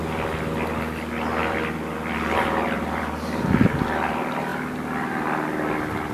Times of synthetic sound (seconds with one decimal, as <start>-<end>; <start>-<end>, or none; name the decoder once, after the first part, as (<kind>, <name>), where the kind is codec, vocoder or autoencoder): 1.4-3.8 (vocoder, BigVGAN v2)